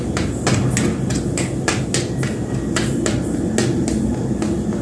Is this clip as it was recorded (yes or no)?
yes